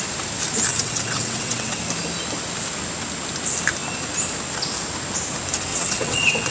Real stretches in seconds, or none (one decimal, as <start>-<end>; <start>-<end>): 0.0-0.7; 1.8-5.7